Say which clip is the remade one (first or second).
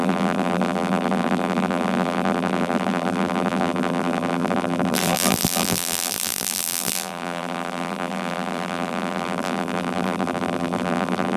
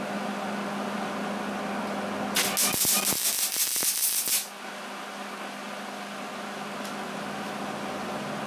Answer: first